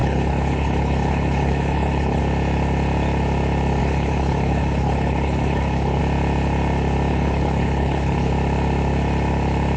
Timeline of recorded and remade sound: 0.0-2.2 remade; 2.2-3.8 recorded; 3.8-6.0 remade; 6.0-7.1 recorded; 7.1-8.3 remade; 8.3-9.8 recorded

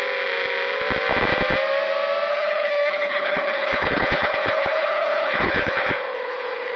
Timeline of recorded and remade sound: 0.0-2.3 recorded; 2.3-6.8 remade

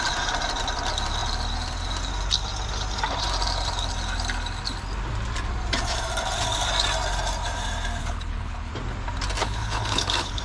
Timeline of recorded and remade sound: 0.0-8.0 recorded; 8.0-8.7 remade; 8.7-9.4 recorded; 9.4-10.4 remade

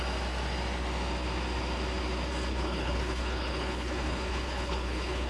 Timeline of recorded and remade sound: 0.0-2.5 recorded; 2.5-5.3 remade